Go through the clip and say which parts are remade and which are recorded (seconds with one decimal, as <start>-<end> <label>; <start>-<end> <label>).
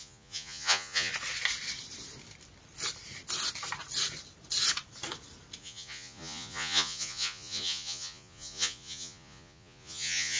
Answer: 0.0-1.1 remade; 1.1-5.6 recorded; 5.6-10.4 remade